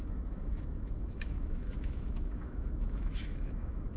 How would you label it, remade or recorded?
remade